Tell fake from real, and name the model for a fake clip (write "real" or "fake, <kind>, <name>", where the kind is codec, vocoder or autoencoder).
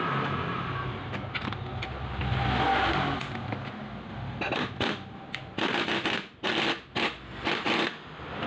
real